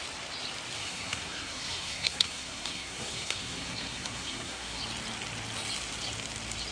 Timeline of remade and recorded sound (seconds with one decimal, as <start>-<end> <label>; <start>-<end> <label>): 0.0-0.8 recorded; 0.8-4.8 remade; 4.8-6.7 recorded